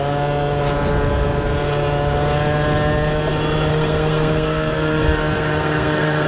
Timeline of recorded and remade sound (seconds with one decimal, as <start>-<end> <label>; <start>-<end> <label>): 0.0-3.7 recorded; 3.7-6.3 remade